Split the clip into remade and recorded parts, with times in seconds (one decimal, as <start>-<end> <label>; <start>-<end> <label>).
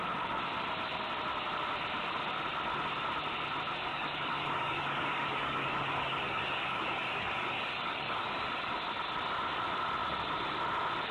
0.0-3.9 recorded; 3.9-8.5 remade; 8.5-11.1 recorded